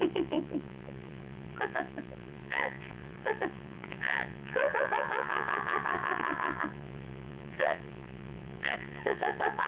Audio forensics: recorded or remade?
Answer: remade